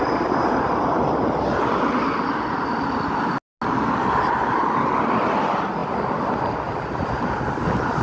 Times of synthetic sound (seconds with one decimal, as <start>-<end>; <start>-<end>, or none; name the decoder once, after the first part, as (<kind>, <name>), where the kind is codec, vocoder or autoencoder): none